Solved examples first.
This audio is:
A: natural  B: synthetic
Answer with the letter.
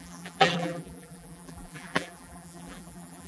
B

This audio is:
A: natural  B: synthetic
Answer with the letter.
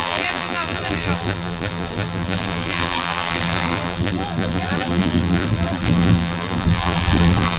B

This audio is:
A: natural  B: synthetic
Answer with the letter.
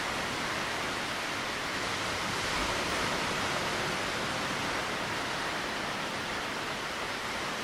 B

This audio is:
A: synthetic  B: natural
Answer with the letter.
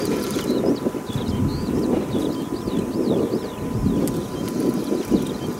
B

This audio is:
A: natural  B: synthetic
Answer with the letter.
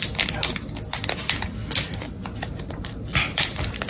A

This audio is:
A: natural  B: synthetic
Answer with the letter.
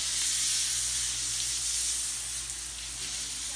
A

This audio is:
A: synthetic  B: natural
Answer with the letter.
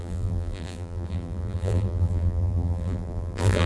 A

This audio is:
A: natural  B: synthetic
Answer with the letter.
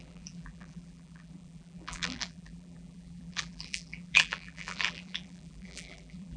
B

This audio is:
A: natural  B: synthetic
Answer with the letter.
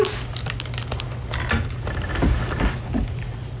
A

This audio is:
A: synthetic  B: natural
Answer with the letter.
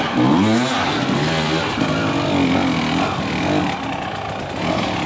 B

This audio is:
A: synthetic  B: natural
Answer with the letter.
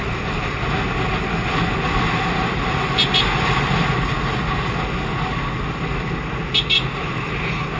B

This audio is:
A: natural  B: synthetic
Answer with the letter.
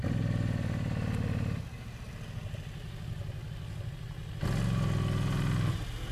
A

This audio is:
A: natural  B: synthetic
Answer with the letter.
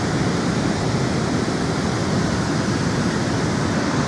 B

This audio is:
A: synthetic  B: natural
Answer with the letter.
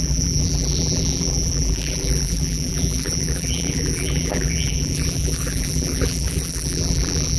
A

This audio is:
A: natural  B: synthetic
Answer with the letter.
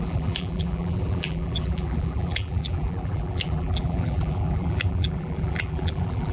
B